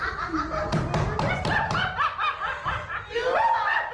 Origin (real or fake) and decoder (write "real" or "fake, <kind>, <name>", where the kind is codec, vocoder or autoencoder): real